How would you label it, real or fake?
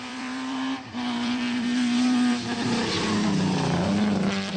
fake